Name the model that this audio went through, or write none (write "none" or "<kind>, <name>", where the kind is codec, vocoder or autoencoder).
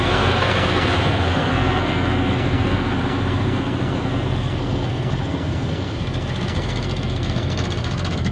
codec, SNAC